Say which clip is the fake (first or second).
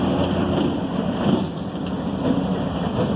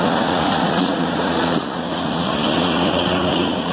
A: second